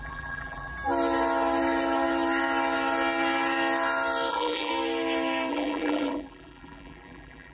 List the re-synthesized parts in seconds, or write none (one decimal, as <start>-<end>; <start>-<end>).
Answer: 0.0-0.7; 4.3-4.7; 5.5-7.5